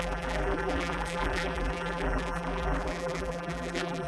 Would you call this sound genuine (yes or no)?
no